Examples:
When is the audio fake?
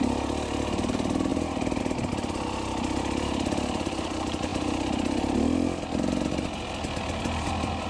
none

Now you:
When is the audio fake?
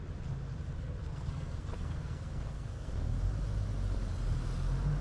1.0-3.2 (codec, SNAC)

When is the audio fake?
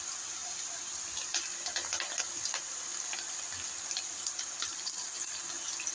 none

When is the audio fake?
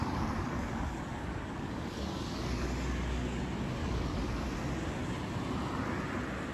0.0-3.4 (codec, DAC); 3.8-4.5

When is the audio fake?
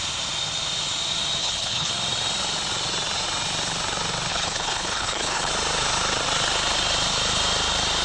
1.4-1.9 (codec, HILCodec); 4.3-5.5